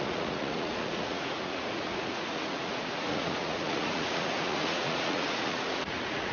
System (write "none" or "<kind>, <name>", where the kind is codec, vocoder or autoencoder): vocoder, Vocos